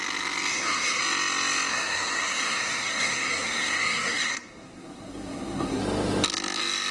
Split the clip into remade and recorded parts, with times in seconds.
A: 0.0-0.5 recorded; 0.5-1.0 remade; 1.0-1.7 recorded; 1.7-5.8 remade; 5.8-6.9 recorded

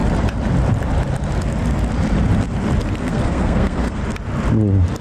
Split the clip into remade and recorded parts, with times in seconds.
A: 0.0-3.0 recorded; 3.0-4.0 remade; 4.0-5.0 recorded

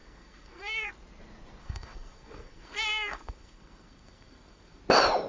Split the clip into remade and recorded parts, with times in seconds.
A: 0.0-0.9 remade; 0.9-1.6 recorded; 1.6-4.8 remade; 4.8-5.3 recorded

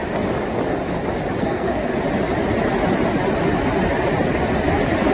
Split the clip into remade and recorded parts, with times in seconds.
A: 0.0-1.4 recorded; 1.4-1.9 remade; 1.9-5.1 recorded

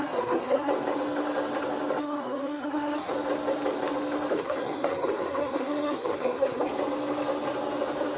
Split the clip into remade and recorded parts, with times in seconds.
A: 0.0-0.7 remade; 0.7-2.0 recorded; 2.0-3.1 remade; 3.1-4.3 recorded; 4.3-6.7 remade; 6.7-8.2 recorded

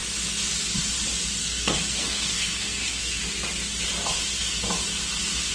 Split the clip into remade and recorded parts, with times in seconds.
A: 0.0-1.4 recorded; 1.4-3.2 remade; 3.2-5.5 recorded

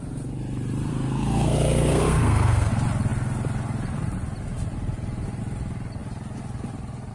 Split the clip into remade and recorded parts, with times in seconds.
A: 0.0-0.9 recorded; 0.9-2.7 remade; 2.7-7.1 recorded

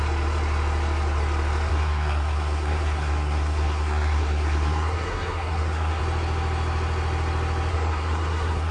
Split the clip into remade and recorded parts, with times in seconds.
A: 0.0-1.7 recorded; 1.7-6.0 remade; 6.0-7.7 recorded; 7.7-8.7 remade